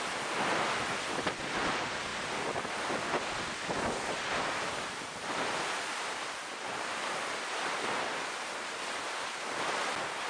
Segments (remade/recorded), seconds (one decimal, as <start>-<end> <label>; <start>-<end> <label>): 0.0-10.3 recorded